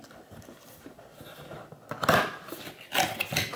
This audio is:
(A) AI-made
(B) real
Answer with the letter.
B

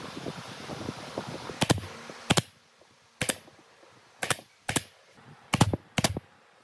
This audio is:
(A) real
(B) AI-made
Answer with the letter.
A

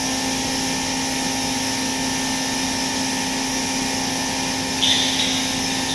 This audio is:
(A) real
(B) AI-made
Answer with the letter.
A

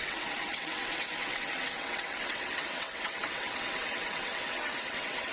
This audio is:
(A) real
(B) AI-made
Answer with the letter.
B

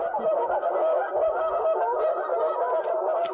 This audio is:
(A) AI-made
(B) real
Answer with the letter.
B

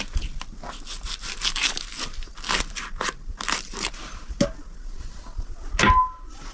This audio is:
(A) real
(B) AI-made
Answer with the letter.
A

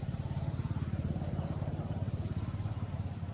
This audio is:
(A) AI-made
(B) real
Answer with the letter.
A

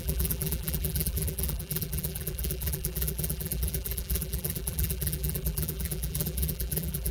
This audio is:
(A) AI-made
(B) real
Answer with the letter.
A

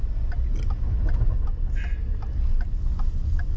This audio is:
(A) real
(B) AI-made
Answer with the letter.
A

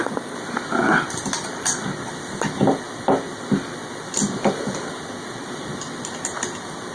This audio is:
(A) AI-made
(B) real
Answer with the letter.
B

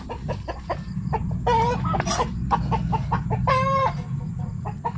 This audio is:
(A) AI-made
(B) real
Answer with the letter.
B